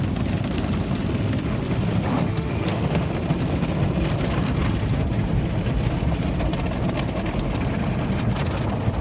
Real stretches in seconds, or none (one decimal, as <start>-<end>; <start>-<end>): 0.0-2.1; 3.1-9.0